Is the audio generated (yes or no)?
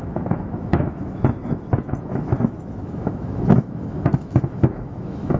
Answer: yes